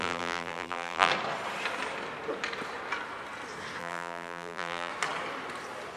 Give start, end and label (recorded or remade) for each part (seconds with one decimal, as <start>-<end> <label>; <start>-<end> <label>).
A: 0.0-1.1 remade; 1.1-3.8 recorded; 3.8-4.9 remade; 4.9-6.0 recorded